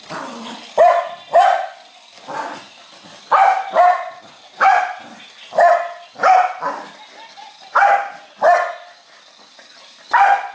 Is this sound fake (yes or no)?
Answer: no